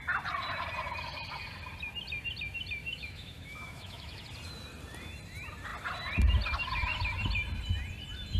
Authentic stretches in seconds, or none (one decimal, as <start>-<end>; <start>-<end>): 0.0-2.8; 4.2-8.4